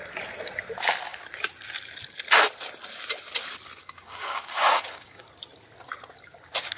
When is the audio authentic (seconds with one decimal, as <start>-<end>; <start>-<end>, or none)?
0.0-3.8; 5.2-6.8